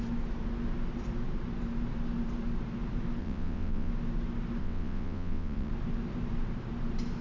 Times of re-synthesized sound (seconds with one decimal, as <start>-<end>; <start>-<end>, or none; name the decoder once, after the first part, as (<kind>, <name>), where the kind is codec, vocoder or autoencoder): 3.2-3.9 (vocoder, WaveNeXt); 4.6-5.7